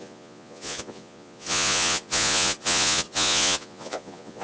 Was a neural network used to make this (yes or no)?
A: yes